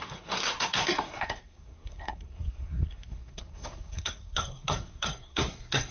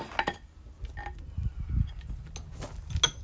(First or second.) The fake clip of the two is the first